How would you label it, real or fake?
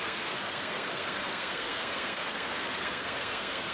fake